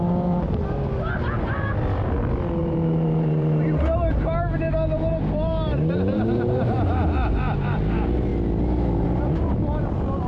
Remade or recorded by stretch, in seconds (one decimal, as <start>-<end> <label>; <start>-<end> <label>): 0.0-2.6 recorded; 2.6-7.8 remade; 7.8-10.3 recorded